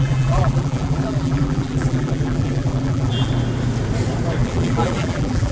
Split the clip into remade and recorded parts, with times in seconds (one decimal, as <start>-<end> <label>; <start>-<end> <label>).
0.0-3.3 remade; 3.3-4.4 recorded; 4.4-5.5 remade